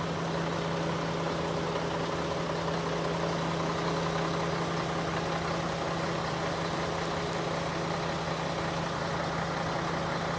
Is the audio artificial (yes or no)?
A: no